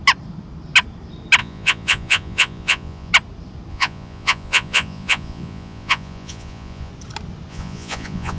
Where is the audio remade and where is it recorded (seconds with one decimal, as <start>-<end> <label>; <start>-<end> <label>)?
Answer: 0.0-1.4 recorded; 1.4-3.1 remade; 3.1-3.7 recorded; 3.7-6.9 remade; 6.9-7.5 recorded; 7.5-8.4 remade